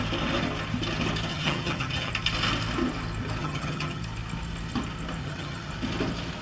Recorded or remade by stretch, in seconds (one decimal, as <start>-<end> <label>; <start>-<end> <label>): 0.0-1.3 recorded; 1.3-2.1 remade; 2.1-3.4 recorded; 3.4-4.0 remade; 4.0-5.2 recorded; 5.2-5.7 remade; 5.7-6.4 recorded